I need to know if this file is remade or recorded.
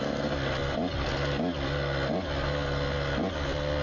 recorded